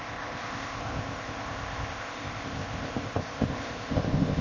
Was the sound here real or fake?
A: fake